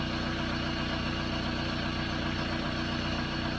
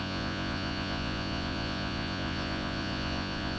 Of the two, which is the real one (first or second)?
first